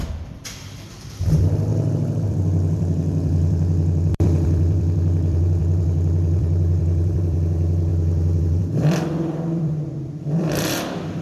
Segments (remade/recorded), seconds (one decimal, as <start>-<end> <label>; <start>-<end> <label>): 0.0-1.7 remade; 1.7-2.3 recorded; 2.3-11.2 remade